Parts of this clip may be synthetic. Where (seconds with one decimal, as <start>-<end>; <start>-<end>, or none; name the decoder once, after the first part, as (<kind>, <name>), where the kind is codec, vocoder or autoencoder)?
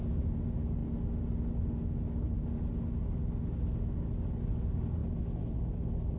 none